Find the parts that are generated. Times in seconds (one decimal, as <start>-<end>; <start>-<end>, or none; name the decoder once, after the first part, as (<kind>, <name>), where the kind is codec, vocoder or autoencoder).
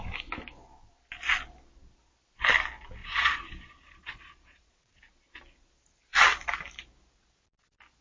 3.0-5.0 (vocoder, Vocos)